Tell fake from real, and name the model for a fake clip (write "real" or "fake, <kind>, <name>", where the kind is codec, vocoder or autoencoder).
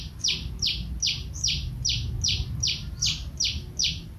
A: real